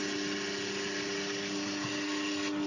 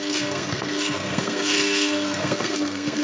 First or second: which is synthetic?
second